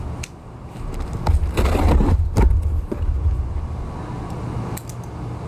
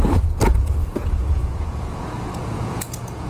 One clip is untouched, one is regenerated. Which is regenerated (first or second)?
second